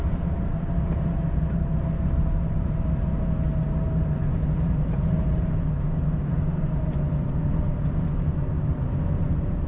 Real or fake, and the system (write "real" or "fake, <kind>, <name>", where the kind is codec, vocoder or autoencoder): fake, vocoder, BigVGAN v2